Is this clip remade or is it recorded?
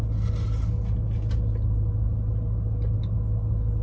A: recorded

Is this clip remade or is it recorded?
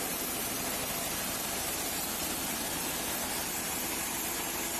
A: remade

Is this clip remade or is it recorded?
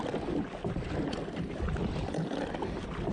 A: recorded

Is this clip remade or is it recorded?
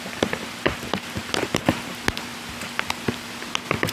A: remade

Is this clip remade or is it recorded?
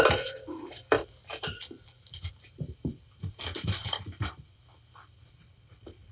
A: remade